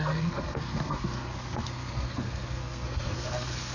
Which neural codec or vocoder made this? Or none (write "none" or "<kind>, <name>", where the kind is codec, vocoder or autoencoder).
codec, SNAC